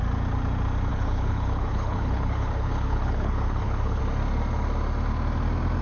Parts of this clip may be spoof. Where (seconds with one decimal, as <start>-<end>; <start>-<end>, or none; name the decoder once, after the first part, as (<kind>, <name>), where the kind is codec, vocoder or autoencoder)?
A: 0.9-4.0 (codec, HILCodec)